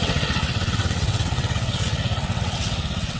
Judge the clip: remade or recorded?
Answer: remade